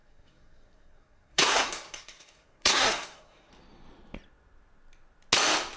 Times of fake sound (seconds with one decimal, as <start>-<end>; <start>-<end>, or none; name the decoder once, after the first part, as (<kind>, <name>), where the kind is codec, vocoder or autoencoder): 0.0-3.5 (codec, SNAC)